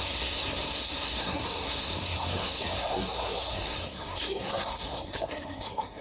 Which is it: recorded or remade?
remade